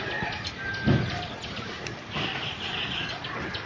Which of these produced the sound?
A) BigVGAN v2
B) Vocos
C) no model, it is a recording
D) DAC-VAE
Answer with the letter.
C